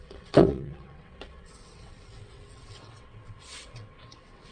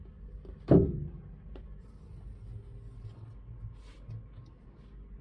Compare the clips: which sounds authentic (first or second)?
second